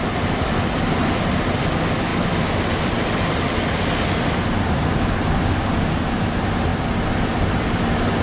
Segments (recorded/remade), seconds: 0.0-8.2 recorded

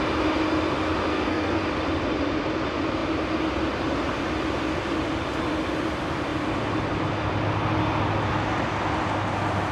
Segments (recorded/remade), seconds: 0.0-1.1 recorded; 1.1-1.6 remade; 1.6-9.7 recorded